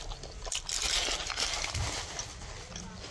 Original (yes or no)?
yes